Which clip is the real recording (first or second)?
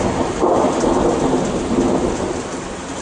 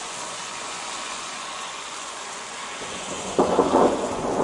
first